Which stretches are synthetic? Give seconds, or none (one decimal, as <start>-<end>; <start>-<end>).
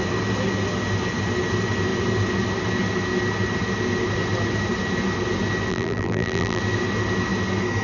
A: 5.7-6.6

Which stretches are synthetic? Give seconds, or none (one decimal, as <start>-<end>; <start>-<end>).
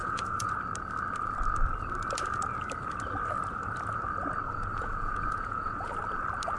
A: 0.0-0.5; 4.7-5.9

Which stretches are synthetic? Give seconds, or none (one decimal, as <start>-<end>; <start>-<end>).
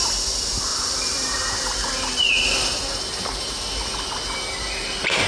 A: none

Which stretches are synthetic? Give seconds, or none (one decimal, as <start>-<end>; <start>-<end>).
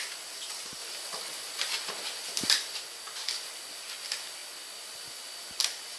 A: none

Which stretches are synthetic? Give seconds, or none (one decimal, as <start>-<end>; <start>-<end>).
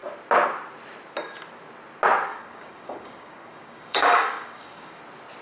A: 2.3-5.0